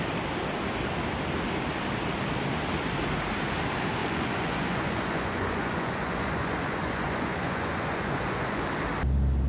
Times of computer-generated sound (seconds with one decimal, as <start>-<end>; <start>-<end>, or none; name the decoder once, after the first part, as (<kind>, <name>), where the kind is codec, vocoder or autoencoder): 4.0-8.6 (vocoder, Vocos)

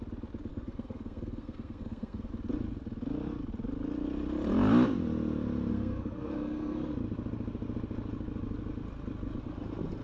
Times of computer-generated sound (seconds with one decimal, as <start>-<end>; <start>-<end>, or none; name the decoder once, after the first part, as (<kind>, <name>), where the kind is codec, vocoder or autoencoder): 0.5-2.3 (codec, SNAC); 5.7-6.9

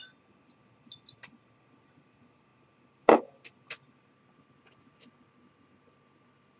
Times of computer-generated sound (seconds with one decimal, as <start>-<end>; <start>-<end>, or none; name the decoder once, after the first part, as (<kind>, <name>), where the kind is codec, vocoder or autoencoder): none

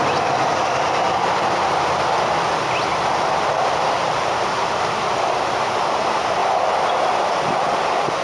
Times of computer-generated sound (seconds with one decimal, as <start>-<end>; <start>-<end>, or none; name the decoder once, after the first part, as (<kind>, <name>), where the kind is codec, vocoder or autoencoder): none